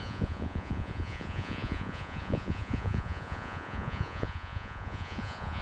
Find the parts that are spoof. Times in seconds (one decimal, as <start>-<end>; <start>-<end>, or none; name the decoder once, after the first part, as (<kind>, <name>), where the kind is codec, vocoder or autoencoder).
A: 0.0-5.6 (vocoder, Vocos)